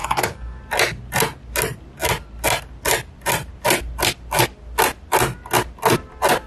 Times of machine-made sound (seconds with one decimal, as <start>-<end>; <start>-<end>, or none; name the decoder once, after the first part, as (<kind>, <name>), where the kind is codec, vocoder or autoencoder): 0.0-0.6 (codec, DAC)